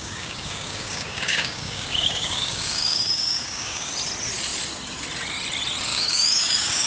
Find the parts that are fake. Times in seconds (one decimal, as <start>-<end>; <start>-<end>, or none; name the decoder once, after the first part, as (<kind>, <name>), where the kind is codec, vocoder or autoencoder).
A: 0.0-3.9 (codec, DAC); 5.9-6.9